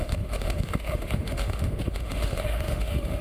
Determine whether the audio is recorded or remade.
remade